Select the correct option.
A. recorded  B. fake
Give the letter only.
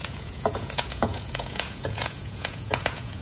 B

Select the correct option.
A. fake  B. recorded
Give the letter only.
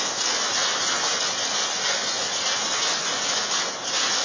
A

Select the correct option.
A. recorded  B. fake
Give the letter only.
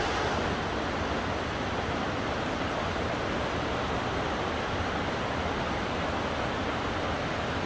A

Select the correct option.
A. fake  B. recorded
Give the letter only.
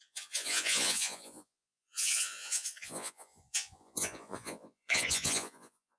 A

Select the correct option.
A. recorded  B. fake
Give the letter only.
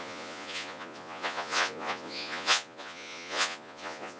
B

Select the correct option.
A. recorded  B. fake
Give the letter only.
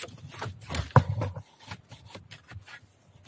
A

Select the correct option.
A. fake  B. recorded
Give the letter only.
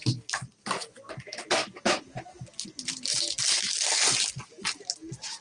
B